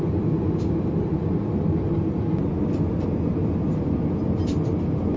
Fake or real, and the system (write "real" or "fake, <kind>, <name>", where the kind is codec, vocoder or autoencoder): real